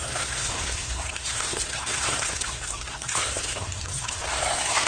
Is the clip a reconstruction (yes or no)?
yes